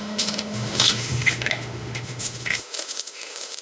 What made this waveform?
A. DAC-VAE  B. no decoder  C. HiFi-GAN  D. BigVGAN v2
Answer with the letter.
A